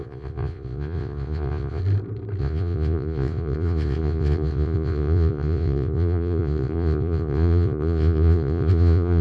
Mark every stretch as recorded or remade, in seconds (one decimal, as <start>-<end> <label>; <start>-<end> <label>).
0.0-1.8 remade; 1.8-2.4 recorded; 2.4-9.2 remade